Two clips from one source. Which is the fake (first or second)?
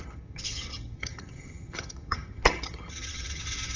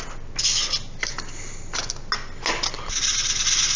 first